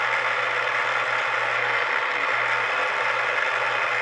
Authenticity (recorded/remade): recorded